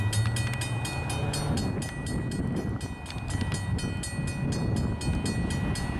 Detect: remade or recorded recorded